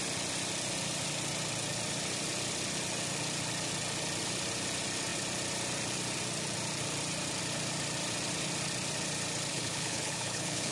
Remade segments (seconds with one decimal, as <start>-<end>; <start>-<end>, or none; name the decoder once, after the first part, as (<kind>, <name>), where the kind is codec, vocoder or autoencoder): 9.5-10.7 (codec, HILCodec)